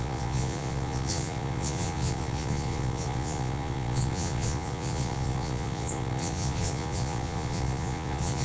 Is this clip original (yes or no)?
no